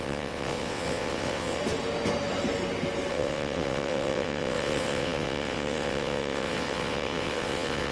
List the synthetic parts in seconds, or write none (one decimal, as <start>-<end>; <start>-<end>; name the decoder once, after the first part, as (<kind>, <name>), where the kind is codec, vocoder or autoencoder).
0.0-1.6 (vocoder, WaveNeXt); 3.1-7.9